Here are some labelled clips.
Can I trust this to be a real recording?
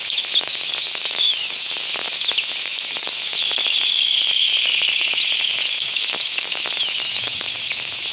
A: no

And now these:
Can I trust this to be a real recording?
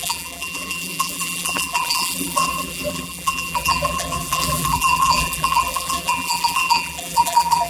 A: no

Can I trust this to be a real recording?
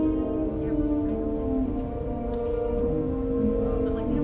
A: yes